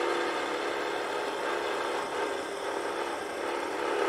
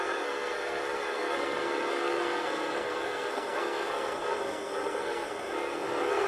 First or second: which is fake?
second